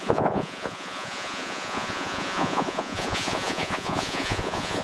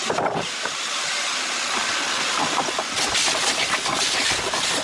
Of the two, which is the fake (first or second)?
first